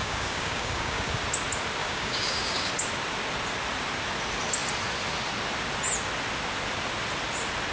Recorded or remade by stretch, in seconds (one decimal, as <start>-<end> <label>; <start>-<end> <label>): 0.0-1.2 remade; 1.2-1.8 recorded; 1.8-2.7 remade; 2.7-7.7 recorded